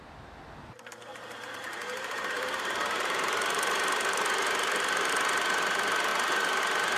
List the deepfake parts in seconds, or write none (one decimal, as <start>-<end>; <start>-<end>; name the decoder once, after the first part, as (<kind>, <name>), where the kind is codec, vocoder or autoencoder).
1.1-5.1 (vocoder, BigVGAN v2)